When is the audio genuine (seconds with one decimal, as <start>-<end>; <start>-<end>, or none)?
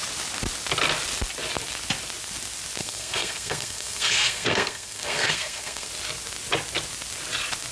0.0-2.8; 5.9-7.7